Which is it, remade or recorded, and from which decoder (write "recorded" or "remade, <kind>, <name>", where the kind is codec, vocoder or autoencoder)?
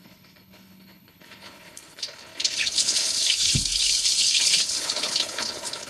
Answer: remade, codec, HILCodec